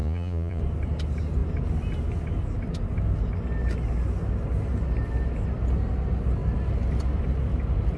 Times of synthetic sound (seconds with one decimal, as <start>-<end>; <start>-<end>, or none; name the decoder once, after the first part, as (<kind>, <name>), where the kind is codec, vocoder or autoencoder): 0.0-0.6 (vocoder, Vocos)